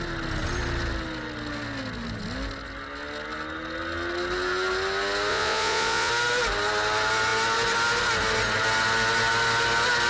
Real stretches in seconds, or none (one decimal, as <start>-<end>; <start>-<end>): 0.0-5.3; 6.1-10.1